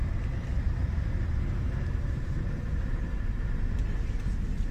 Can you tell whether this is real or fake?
real